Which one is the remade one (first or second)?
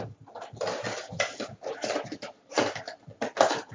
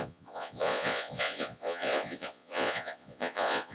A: second